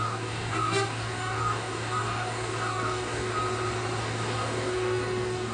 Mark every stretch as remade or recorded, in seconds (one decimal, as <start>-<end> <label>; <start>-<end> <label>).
0.0-3.3 remade; 3.3-4.0 recorded; 4.0-5.5 remade